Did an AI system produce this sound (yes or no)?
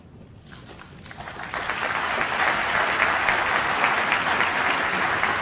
no